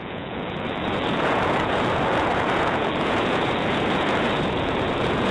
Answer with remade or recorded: remade